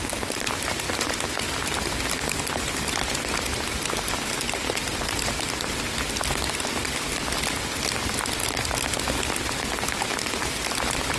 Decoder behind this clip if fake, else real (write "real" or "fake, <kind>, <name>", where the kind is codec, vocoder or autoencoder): real